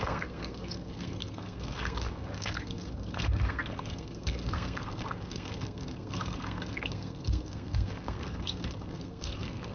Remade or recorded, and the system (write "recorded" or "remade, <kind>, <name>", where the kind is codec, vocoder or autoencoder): remade, codec, SNAC